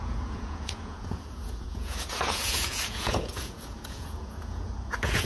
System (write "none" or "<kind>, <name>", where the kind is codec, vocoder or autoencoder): vocoder, Vocos